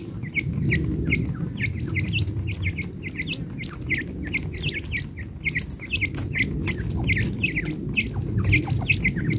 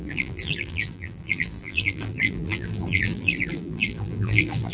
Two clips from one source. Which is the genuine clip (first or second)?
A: first